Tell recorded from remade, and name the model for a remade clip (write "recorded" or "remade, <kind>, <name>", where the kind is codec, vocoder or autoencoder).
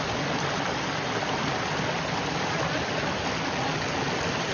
recorded